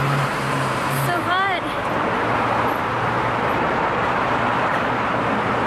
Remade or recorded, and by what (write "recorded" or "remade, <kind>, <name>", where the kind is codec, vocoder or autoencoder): remade, vocoder, BigVGAN v2